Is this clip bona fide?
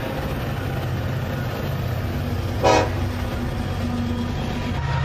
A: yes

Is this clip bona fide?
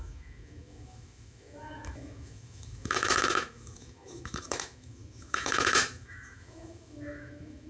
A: no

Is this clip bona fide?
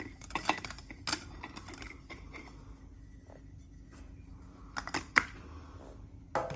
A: yes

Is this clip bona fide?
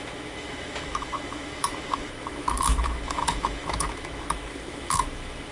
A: no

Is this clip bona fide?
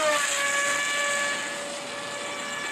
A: yes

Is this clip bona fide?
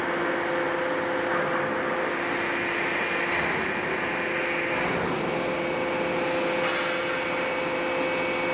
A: yes